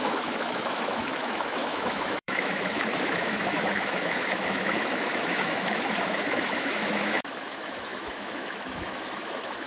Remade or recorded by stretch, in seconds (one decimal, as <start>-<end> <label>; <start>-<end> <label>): 0.0-9.7 remade